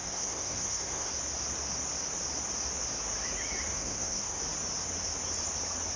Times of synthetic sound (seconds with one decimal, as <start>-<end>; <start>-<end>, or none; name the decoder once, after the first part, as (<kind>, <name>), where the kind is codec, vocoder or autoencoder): 0.0-1.1 (codec, SNAC); 3.7-4.4